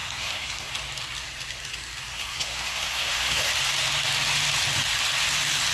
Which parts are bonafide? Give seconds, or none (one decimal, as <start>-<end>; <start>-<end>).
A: 0.7-2.1; 3.5-5.7